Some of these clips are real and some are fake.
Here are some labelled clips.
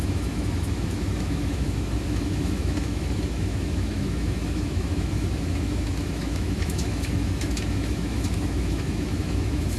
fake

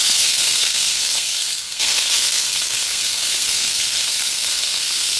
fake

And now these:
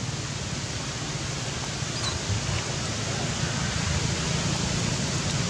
real